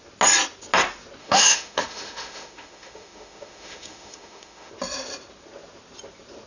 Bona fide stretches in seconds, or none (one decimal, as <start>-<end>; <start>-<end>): 0.0-1.2; 4.7-6.5